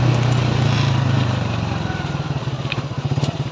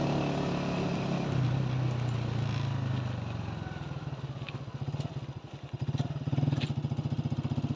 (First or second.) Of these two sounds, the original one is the second